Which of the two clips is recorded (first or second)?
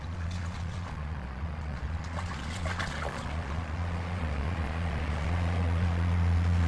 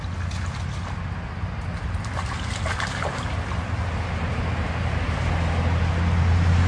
second